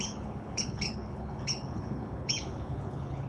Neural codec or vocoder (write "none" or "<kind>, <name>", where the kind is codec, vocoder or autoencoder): codec, HILCodec